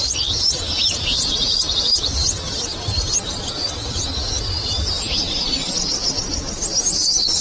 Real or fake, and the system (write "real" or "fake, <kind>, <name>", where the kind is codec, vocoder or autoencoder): real